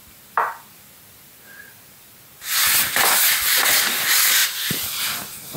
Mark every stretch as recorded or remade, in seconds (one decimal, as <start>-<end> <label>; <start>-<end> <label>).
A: 0.0-5.6 remade